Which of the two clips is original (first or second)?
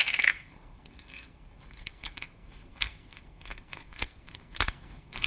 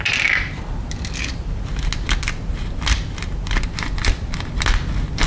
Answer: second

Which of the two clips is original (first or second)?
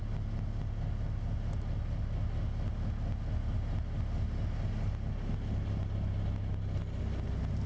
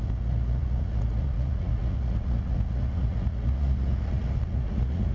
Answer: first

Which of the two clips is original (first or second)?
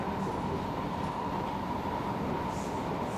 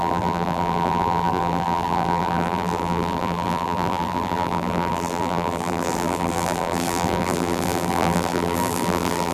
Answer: first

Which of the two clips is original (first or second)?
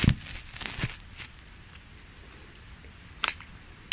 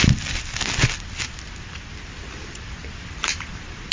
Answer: first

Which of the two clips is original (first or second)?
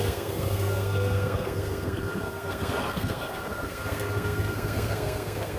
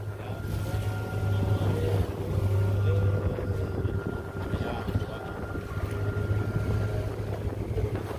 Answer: second